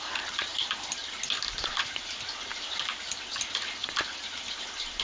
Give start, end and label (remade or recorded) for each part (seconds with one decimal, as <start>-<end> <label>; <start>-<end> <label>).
0.0-5.0 recorded